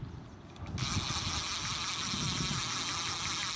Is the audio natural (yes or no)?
yes